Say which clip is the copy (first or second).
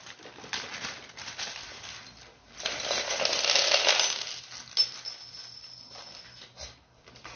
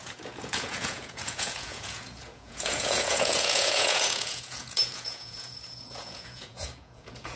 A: second